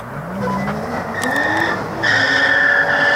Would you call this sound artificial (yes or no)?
no